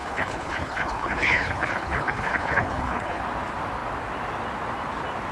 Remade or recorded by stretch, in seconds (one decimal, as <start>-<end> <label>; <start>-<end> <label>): 0.0-3.2 remade; 3.2-5.3 recorded